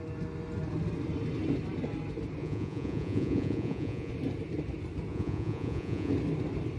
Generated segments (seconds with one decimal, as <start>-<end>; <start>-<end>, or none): 2.4-4.1; 5.1-6.1